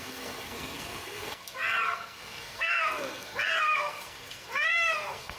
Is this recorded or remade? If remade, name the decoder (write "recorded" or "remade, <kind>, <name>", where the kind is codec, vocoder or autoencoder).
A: remade, codec, SNAC